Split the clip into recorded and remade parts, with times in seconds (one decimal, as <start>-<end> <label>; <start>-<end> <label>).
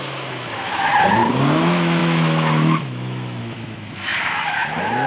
0.0-0.9 remade; 0.9-1.6 recorded; 1.6-5.1 remade